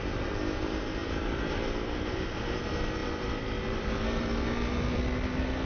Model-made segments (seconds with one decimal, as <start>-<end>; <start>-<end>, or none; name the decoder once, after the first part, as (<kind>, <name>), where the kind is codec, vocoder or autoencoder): 1.0-2.4 (vocoder, BigVGAN v2)